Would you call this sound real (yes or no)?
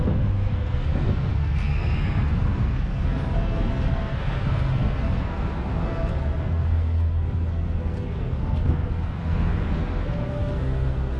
no